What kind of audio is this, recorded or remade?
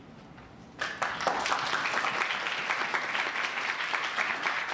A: recorded